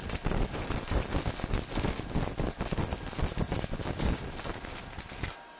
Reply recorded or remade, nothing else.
recorded